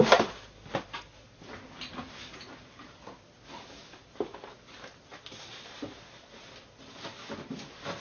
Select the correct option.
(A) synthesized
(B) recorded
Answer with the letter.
B